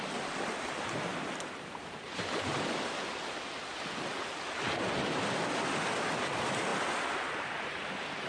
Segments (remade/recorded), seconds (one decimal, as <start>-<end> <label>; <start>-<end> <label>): 0.0-8.3 recorded